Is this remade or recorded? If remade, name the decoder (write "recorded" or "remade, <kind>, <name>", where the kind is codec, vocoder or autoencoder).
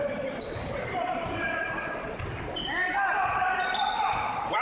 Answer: remade, vocoder, BigVGAN v2